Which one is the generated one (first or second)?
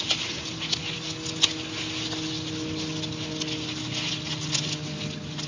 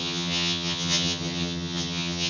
second